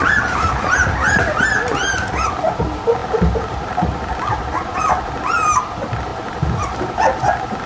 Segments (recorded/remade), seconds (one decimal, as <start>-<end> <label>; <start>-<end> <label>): 0.0-7.7 recorded

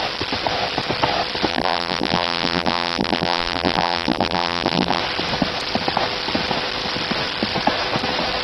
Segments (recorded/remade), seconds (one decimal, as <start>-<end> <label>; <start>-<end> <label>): 0.0-1.5 recorded; 1.5-5.0 remade; 5.0-8.4 recorded

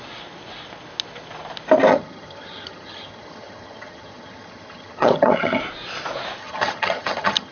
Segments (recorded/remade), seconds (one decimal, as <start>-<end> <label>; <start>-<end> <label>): 0.0-1.9 recorded; 1.9-5.6 remade; 5.6-6.4 recorded; 6.4-7.5 remade